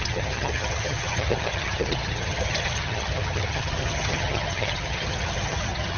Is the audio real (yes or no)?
no